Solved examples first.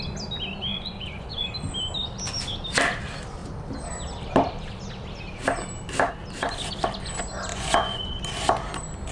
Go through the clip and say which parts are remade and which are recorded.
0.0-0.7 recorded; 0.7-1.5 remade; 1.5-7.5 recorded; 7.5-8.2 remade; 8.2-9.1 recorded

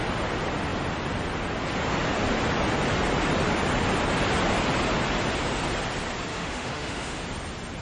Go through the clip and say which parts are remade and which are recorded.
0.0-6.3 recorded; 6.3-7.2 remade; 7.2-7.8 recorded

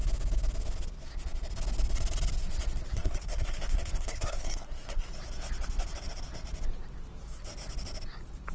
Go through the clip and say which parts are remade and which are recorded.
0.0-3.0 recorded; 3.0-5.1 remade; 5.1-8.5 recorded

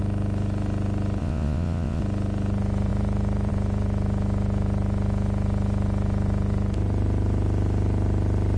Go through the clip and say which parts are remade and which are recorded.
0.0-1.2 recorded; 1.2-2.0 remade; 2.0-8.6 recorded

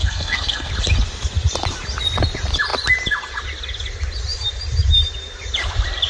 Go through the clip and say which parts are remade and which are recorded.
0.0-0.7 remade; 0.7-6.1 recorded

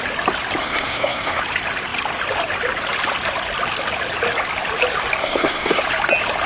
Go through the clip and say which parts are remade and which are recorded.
0.0-0.6 recorded; 0.6-1.4 remade; 1.4-5.2 recorded; 5.2-5.8 remade; 5.8-6.5 recorded

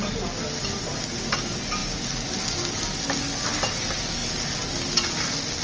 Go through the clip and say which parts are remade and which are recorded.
0.0-5.6 recorded